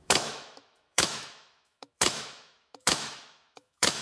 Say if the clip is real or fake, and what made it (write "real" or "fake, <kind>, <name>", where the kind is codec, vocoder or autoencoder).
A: fake, autoencoder, DAC-VAE